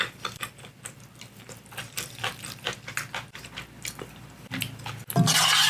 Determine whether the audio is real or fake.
real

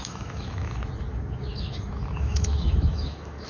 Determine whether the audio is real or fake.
fake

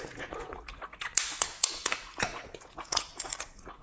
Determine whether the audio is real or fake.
fake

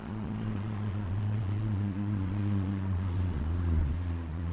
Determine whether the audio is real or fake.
fake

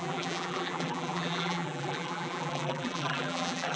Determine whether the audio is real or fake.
fake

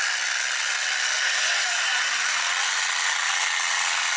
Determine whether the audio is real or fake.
real